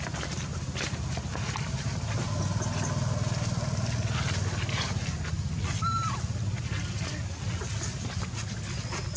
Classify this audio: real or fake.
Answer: real